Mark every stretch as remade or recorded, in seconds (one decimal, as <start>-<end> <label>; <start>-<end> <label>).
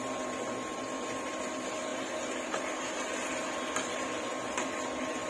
0.0-5.3 recorded